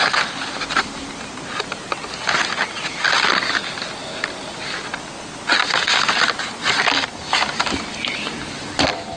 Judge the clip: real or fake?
real